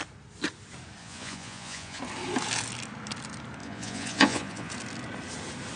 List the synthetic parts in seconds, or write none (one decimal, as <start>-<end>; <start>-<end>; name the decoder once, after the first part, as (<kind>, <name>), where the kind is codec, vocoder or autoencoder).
1.0-2.0 (vocoder, Vocos); 3.6-4.7